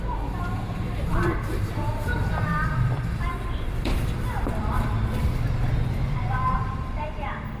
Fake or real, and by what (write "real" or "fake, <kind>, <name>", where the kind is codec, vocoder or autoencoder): fake, vocoder, BigVGAN v2